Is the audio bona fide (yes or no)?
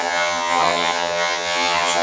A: no